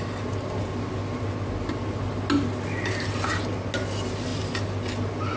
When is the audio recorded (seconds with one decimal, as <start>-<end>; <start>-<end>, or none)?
0.0-5.4

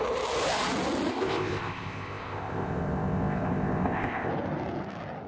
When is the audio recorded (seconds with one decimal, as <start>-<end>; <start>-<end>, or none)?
0.0-1.1; 4.3-5.3

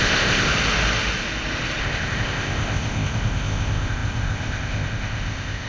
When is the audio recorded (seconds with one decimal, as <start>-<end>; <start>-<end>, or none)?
0.5-1.8

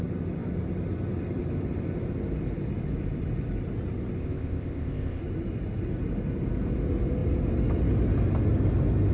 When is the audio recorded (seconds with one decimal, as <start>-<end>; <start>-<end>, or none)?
0.0-4.2; 5.2-9.1

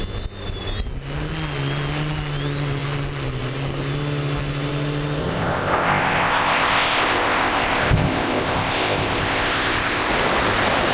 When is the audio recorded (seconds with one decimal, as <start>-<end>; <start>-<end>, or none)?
0.0-5.2; 10.1-10.9

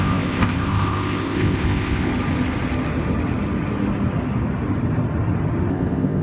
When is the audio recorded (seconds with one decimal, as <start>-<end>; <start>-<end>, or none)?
2.1-5.7

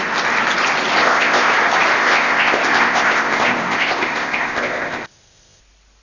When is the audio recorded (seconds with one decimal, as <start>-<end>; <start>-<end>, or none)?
0.0-1.0; 1.5-2.0; 5.6-6.0